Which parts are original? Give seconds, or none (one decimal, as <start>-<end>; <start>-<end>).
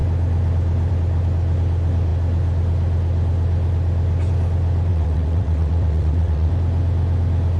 0.0-4.9; 6.5-7.6